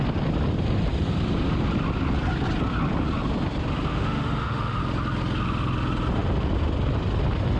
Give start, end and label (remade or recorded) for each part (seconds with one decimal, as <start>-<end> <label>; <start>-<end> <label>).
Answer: 0.0-3.9 recorded; 3.9-4.8 remade; 4.8-7.6 recorded